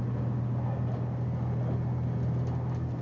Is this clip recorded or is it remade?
recorded